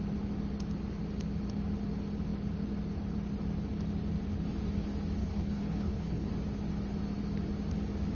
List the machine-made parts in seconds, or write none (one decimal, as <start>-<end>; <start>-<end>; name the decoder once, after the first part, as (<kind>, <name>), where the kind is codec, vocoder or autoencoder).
5.2-6.3 (codec, HILCodec)